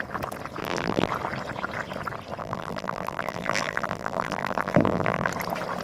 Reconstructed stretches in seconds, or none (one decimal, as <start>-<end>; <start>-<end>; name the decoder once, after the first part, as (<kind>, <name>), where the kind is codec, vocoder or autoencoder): 0.6-1.1 (vocoder, BigVGAN v2); 2.4-5.3